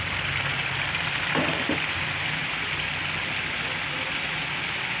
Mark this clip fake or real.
real